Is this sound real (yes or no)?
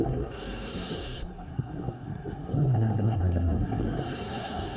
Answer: no